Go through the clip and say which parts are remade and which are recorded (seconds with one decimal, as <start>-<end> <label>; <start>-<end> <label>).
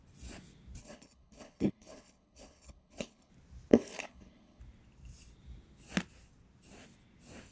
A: 0.0-0.8 recorded; 0.8-3.3 remade; 3.3-3.7 recorded; 3.7-4.6 remade; 4.6-7.5 recorded